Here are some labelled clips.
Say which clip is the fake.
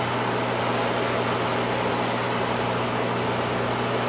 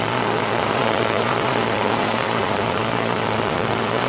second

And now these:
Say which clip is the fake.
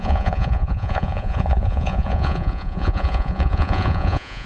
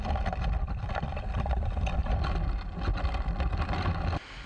first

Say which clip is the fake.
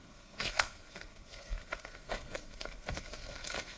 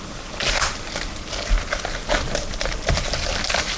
first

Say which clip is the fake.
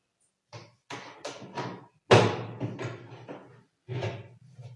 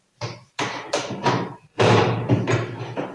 second